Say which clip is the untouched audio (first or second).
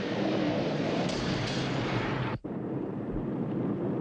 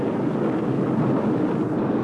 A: second